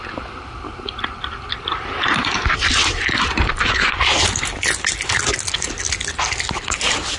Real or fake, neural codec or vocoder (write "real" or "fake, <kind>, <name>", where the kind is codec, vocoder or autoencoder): real